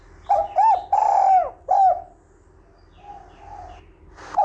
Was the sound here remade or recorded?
recorded